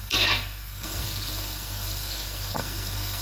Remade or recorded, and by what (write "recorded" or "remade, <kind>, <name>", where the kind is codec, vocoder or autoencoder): remade, codec, SNAC